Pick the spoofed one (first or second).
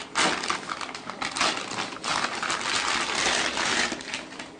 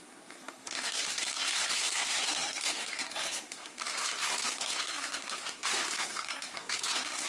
second